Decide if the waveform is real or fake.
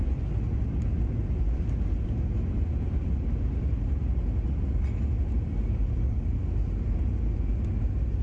real